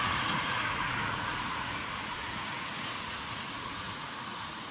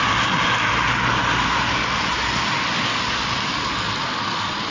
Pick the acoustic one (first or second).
second